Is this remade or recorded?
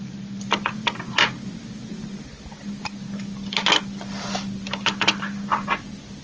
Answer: recorded